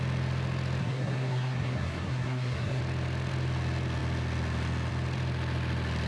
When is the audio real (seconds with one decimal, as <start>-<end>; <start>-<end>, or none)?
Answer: 0.0-0.8; 2.8-6.1